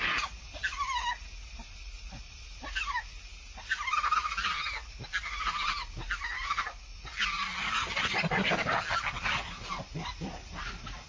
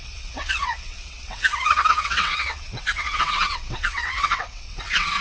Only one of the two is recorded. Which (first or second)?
first